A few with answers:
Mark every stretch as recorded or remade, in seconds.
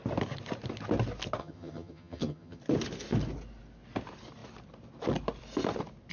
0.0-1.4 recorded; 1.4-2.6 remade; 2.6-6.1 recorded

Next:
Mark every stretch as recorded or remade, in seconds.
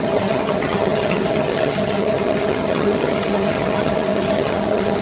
0.0-5.0 remade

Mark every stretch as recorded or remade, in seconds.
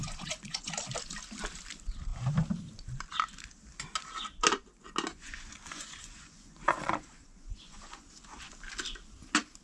0.0-0.7 remade; 0.7-5.1 recorded; 5.1-8.5 remade; 8.5-9.6 recorded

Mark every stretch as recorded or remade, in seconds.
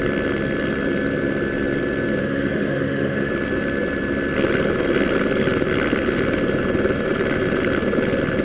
0.0-2.2 recorded; 2.2-3.3 remade; 3.3-8.4 recorded